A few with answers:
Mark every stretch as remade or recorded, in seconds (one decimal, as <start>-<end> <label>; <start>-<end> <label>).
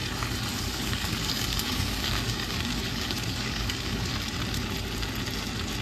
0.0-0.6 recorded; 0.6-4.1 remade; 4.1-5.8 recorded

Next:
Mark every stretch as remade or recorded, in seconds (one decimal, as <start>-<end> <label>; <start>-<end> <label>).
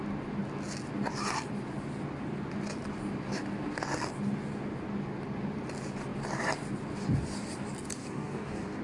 0.0-8.0 recorded; 8.0-8.8 remade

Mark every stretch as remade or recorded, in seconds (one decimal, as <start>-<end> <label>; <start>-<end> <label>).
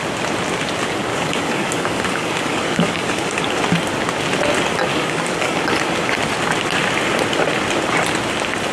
0.0-1.1 recorded; 1.1-3.4 remade; 3.4-4.9 recorded; 4.9-5.6 remade; 5.6-8.7 recorded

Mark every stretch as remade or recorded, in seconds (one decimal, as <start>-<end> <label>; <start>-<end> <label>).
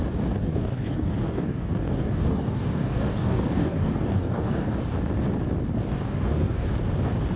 0.0-0.4 recorded; 0.4-4.8 remade; 4.8-5.9 recorded; 5.9-6.7 remade; 6.7-7.4 recorded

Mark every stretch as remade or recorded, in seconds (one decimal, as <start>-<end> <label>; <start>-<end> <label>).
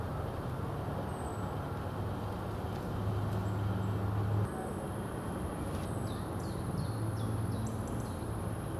0.0-8.8 recorded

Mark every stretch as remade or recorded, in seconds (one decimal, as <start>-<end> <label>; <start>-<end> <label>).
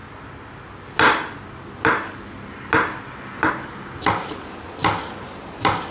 0.0-5.9 recorded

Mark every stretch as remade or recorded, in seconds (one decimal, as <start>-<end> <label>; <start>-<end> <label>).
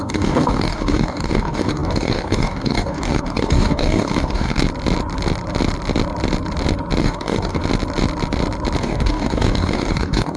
0.0-4.6 remade; 4.6-7.0 recorded; 7.0-7.6 remade; 7.6-8.8 recorded; 8.8-10.4 remade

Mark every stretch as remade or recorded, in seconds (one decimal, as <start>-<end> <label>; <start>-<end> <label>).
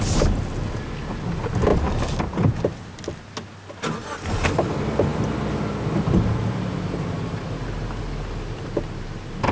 0.0-9.5 recorded